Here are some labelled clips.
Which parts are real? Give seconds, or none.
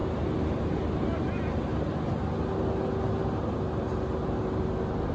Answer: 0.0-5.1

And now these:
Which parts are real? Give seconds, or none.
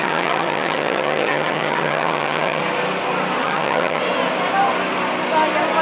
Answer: 2.6-3.4; 4.0-5.8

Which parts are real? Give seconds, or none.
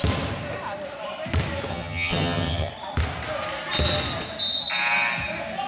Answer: 0.0-1.7; 2.7-5.7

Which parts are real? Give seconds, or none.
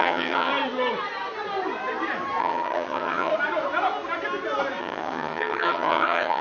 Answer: 0.5-2.4; 3.3-4.8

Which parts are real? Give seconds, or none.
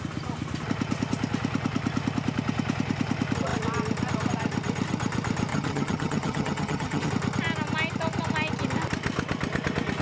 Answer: 0.0-5.5; 7.1-10.0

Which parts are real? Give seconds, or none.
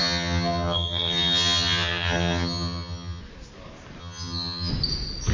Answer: 3.2-4.0; 4.7-5.3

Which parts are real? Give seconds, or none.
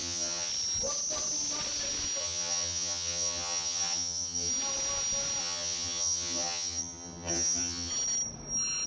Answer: 0.5-2.2; 4.5-5.4; 7.9-8.9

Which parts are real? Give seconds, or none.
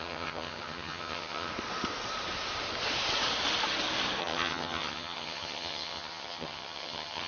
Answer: 1.5-4.2